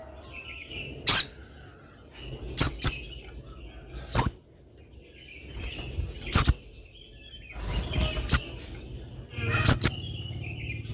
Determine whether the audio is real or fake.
real